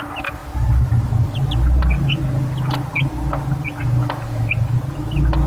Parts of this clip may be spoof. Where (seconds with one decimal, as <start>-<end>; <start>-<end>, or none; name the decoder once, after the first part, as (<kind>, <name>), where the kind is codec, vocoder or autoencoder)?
4.0-4.5 (autoencoder, DAC-VAE)